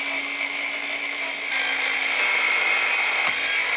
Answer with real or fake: real